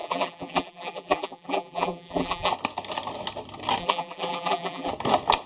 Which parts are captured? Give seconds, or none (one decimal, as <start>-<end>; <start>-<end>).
2.5-3.8; 4.9-5.5